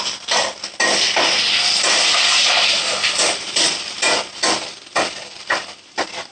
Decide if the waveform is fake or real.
real